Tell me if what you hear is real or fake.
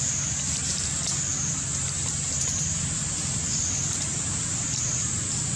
real